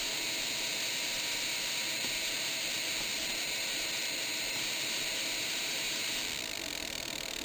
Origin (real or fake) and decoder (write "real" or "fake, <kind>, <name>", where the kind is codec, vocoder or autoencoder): real